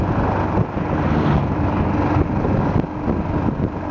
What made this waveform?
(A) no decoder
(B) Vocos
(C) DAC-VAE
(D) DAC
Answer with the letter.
A